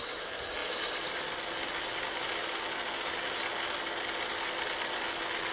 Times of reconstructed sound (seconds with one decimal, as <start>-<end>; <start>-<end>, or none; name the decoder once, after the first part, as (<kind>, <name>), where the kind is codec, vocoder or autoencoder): none

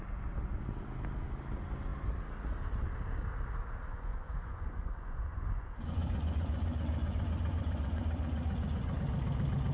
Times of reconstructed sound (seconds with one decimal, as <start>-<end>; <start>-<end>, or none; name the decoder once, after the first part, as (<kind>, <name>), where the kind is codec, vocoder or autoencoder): 3.9-9.0 (vocoder, Vocos)

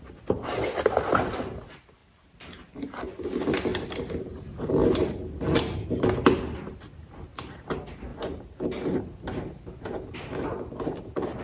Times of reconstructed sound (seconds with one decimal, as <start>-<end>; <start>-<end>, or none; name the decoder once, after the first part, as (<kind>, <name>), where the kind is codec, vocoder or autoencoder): none

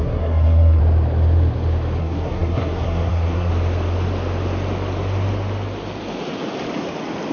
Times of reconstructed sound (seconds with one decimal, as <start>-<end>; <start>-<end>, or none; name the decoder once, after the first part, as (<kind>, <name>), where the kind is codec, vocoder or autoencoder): 0.0-0.8 (codec, SNAC); 2.0-3.5

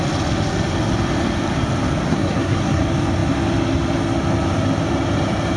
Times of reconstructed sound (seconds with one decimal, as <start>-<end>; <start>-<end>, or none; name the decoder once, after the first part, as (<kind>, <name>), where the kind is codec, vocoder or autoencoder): 2.1-2.8 (codec, SNAC)